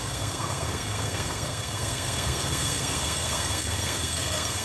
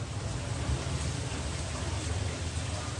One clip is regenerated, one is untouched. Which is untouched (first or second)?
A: second